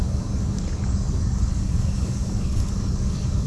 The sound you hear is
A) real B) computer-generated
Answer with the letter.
B